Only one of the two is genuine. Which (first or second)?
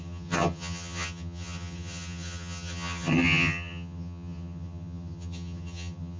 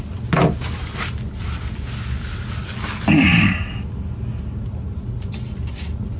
second